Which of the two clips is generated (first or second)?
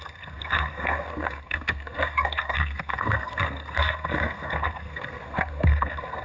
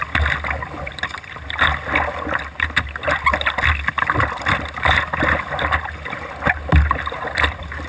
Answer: first